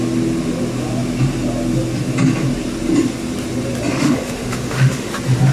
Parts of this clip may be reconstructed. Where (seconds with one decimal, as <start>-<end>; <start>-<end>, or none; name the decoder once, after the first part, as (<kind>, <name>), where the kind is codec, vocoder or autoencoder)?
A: 3.9-5.1 (autoencoder, DAC-VAE)